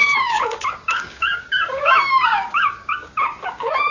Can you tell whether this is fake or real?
fake